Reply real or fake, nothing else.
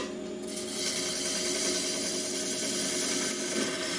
real